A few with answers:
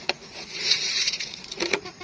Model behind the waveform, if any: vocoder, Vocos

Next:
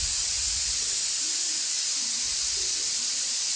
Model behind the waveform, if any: vocoder, BigVGAN v2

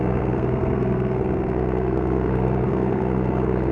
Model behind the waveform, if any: codec, SNAC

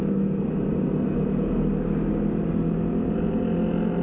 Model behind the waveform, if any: none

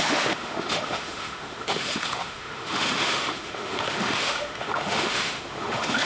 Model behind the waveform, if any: autoencoder, DAC-VAE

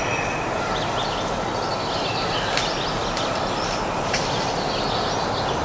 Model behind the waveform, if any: none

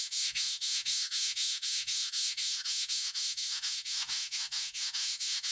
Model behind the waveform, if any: autoencoder, DAC-VAE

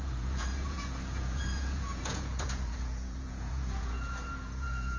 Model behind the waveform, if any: vocoder, Vocos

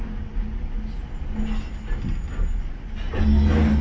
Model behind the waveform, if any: none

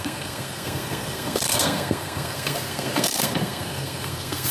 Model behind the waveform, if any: codec, SNAC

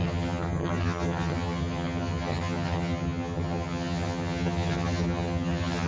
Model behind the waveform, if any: vocoder, HiFi-GAN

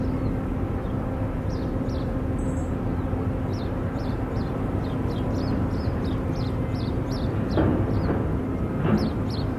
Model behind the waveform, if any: none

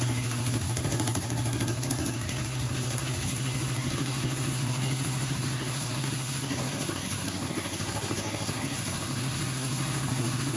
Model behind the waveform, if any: codec, SNAC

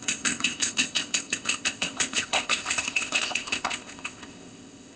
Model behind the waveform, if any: codec, ZipCodec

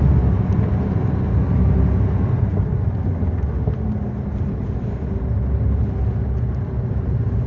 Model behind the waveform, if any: none